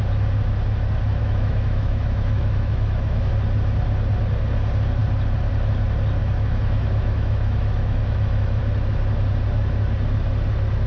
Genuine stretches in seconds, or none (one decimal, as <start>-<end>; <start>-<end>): 0.0-1.2; 3.3-6.2; 8.6-10.9